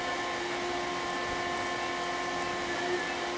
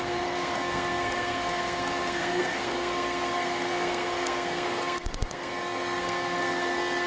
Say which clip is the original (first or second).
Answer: first